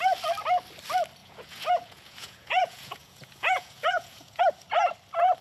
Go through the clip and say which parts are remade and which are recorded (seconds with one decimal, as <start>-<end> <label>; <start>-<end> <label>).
0.0-1.2 recorded; 1.2-4.4 remade; 4.4-5.4 recorded